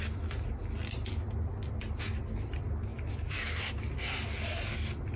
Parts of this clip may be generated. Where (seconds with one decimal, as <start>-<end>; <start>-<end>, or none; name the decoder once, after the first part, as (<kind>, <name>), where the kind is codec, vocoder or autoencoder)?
none